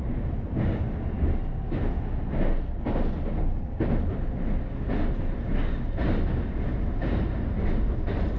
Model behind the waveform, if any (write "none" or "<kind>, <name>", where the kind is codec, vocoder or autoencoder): none